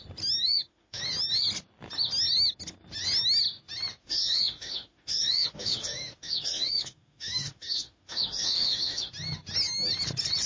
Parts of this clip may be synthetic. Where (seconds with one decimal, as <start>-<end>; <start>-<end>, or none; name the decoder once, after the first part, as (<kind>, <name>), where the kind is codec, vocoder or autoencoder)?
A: 0.4-1.0 (autoencoder, DAC-VAE); 4.0-9.1